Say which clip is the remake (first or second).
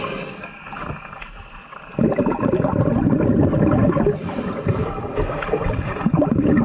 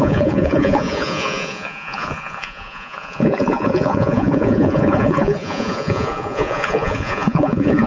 second